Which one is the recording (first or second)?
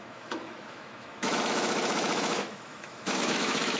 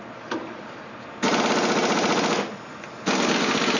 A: second